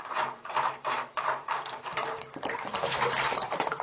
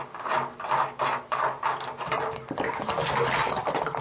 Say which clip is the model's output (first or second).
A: first